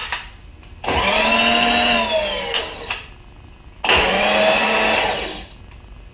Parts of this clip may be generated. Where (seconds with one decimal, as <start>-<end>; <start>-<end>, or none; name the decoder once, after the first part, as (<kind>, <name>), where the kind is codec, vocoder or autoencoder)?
none